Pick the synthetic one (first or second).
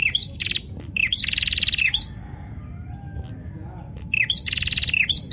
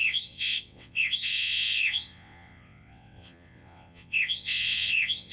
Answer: second